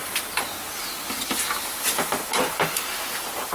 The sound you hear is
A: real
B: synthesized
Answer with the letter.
A